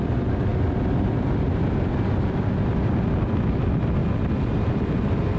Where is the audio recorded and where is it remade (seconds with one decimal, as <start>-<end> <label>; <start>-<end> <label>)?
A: 0.0-5.4 recorded

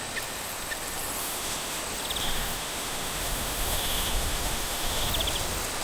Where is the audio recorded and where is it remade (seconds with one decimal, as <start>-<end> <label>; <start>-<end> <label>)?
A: 0.0-1.2 recorded; 1.2-1.8 remade; 1.8-2.2 recorded; 2.2-5.1 remade; 5.1-5.8 recorded

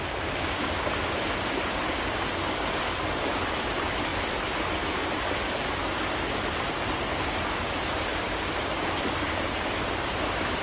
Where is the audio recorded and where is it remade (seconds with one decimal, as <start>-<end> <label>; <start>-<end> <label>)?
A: 0.0-2.4 recorded; 2.4-3.2 remade; 3.2-10.6 recorded

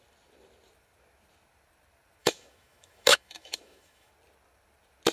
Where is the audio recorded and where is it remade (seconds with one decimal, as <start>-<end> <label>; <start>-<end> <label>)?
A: 0.0-2.2 recorded; 2.2-4.1 remade; 4.1-5.1 recorded